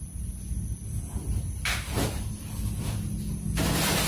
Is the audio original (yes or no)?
yes